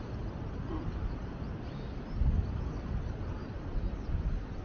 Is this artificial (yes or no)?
no